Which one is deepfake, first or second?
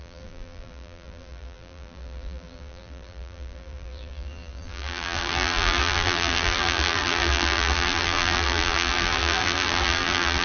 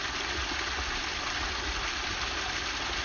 first